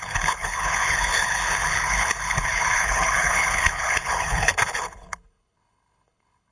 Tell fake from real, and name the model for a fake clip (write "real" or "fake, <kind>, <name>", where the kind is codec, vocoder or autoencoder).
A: fake, codec, HILCodec